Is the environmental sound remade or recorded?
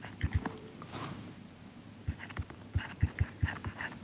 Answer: remade